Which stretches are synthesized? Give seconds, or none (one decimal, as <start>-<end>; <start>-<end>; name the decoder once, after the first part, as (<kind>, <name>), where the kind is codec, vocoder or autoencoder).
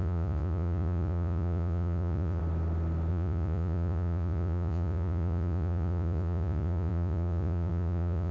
0.0-2.4 (vocoder, Vocos); 3.1-8.3